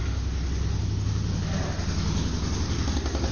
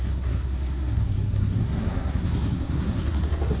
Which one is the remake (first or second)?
second